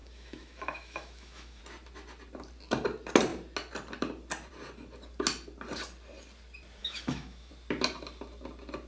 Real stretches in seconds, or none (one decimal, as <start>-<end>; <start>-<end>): 1.6-6.8; 7.5-8.9